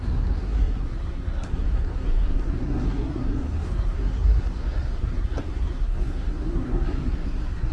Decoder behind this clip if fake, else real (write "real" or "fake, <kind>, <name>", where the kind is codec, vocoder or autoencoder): fake, codec, SNAC